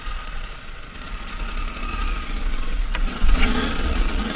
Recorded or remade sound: remade